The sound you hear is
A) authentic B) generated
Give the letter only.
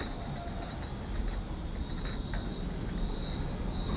A